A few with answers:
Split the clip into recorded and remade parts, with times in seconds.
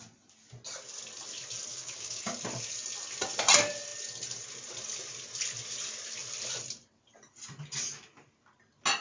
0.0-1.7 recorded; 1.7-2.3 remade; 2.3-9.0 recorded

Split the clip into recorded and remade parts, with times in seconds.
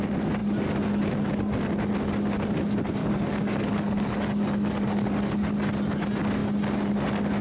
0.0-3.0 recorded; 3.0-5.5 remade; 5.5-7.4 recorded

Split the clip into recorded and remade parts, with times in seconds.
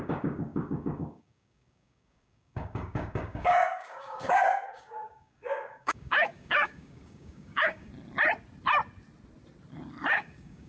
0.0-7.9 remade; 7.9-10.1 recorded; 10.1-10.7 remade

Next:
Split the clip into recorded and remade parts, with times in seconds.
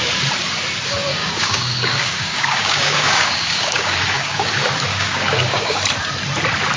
0.0-1.1 recorded; 1.1-4.5 remade; 4.5-4.9 recorded; 4.9-5.8 remade; 5.8-6.8 recorded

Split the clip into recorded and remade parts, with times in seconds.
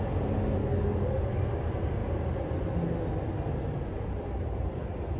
0.0-0.6 recorded; 0.6-1.4 remade; 1.4-5.2 recorded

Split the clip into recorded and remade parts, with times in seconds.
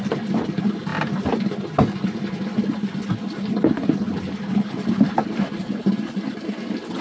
0.0-7.0 recorded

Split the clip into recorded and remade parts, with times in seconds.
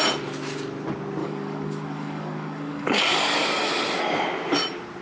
0.0-1.2 recorded; 1.2-3.7 remade; 3.7-5.0 recorded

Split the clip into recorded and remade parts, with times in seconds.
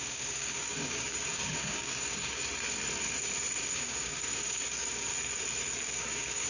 0.0-2.4 remade; 2.4-3.6 recorded; 3.6-5.1 remade; 5.1-5.8 recorded; 5.8-6.5 remade